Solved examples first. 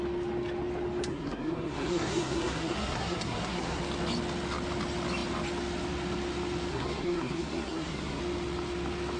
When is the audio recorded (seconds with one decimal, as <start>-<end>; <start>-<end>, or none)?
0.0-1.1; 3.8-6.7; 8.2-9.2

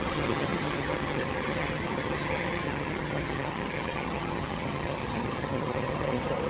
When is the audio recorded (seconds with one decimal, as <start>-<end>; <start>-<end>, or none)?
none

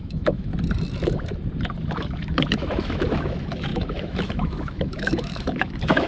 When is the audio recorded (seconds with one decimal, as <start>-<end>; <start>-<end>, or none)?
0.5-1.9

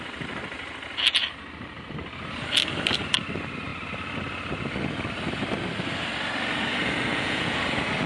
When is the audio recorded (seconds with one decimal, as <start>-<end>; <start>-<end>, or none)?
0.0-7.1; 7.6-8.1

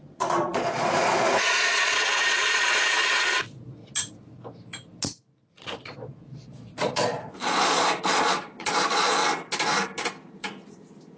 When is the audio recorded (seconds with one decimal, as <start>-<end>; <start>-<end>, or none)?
3.8-5.5; 9.2-11.2